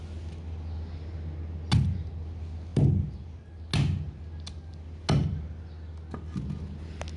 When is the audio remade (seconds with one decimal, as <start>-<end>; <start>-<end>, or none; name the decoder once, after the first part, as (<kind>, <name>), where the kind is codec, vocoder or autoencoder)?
none